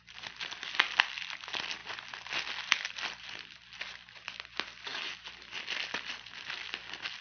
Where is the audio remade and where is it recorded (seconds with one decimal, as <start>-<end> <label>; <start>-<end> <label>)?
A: 0.0-7.2 recorded

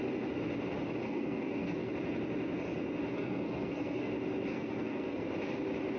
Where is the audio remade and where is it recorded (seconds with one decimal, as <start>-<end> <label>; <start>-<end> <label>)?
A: 0.0-1.0 recorded; 1.0-1.9 remade; 1.9-3.1 recorded; 3.1-4.1 remade; 4.1-4.5 recorded; 4.5-5.3 remade; 5.3-6.0 recorded

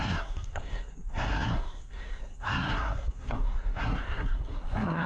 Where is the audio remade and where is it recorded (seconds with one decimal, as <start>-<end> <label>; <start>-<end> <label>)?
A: 0.0-5.1 remade